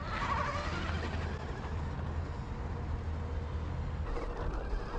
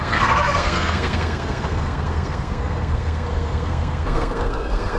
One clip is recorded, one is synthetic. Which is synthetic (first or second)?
second